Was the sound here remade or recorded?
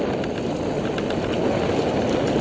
recorded